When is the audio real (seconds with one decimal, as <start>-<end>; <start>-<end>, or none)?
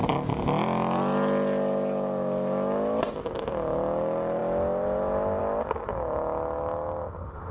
0.0-7.5